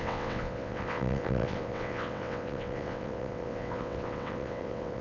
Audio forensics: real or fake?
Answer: fake